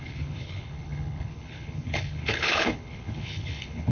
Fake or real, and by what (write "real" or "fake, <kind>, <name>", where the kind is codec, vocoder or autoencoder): fake, codec, HILCodec